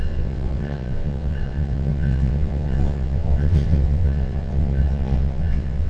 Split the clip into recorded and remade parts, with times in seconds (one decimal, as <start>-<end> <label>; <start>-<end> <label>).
0.0-5.9 remade